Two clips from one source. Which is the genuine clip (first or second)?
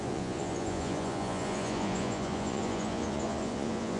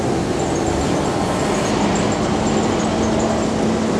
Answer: second